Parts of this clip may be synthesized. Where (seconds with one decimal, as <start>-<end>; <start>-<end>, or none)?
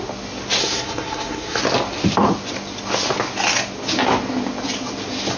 0.6-1.6